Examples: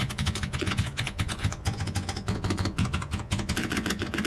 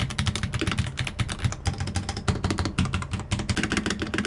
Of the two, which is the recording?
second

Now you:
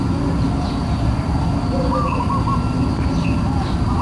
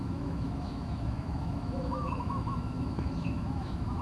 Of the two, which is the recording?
first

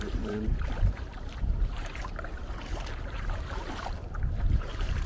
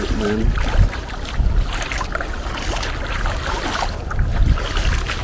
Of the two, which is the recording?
second